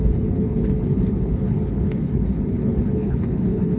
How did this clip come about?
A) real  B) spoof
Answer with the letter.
B